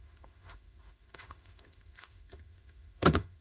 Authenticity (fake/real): fake